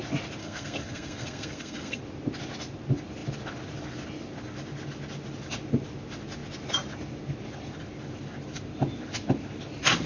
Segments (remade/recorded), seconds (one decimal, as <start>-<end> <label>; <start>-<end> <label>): 0.0-0.4 recorded; 0.4-2.0 remade; 2.0-10.1 recorded